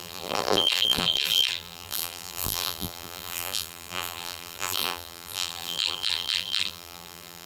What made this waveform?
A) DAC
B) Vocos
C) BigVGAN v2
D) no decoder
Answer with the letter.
C